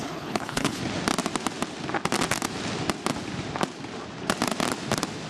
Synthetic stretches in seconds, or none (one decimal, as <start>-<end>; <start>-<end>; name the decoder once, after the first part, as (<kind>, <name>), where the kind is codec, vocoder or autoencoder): 0.0-0.8 (codec, HILCodec)